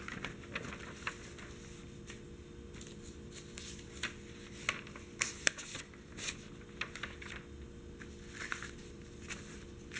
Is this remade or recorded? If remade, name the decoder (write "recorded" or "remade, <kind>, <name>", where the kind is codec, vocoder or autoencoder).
recorded